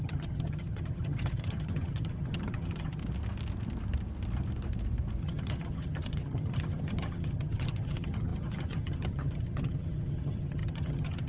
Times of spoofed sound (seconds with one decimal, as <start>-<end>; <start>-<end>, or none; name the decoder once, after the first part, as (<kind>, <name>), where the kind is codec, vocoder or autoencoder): 0.0-3.0 (vocoder, HiFi-GAN); 5.2-11.3